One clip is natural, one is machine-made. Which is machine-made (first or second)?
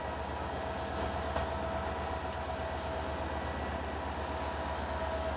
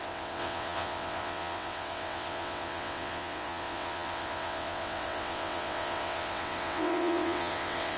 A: second